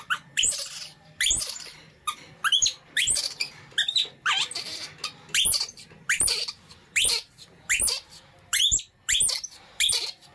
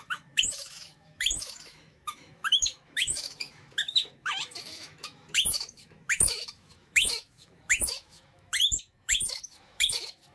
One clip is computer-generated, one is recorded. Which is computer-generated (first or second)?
second